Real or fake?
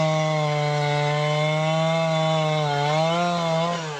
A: real